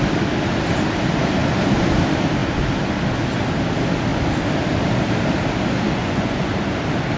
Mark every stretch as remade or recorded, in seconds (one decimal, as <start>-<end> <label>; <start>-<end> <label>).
0.0-6.0 recorded; 6.0-6.5 remade; 6.5-7.2 recorded